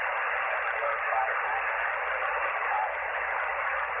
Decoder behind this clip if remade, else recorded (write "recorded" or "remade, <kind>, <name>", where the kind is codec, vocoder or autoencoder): recorded